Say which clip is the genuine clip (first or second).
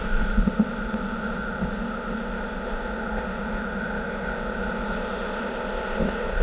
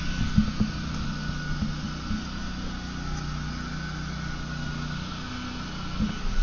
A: second